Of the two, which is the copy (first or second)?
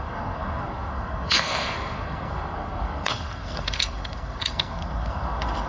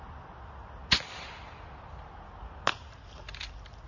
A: first